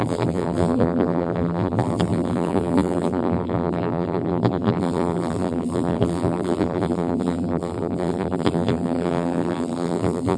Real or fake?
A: fake